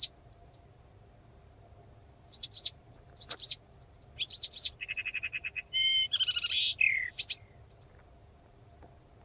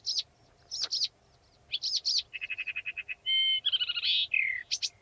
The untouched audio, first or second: second